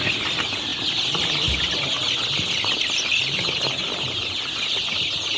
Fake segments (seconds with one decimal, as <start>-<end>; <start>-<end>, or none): none